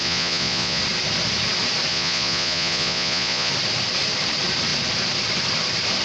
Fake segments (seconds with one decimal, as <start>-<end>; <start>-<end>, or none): 0.0-0.8; 1.9-3.5